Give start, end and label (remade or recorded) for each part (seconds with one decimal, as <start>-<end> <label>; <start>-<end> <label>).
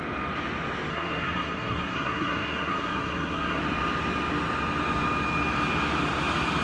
0.0-0.9 recorded; 0.9-3.6 remade; 3.6-6.6 recorded